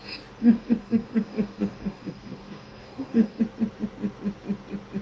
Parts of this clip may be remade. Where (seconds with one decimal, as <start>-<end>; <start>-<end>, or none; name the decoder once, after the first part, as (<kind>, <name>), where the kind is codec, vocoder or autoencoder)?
0.4-3.4 (codec, DAC)